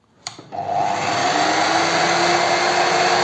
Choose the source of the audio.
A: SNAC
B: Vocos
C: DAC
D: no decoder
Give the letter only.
D